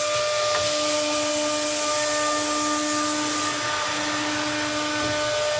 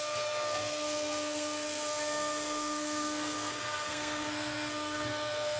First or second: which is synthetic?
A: second